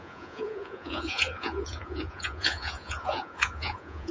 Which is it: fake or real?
fake